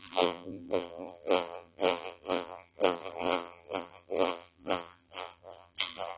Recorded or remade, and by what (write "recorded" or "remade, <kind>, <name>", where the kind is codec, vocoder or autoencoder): remade, vocoder, BigVGAN v2